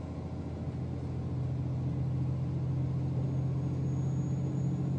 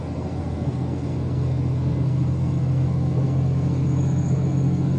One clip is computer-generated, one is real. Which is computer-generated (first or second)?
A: second